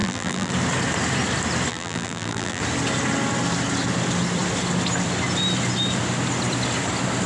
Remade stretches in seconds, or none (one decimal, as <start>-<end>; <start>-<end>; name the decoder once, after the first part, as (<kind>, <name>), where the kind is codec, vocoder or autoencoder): 0.0-0.5 (vocoder, BigVGAN v2); 1.7-2.6